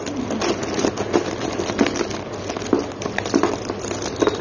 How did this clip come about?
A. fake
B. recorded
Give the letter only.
B